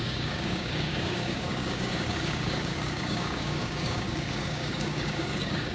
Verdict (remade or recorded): remade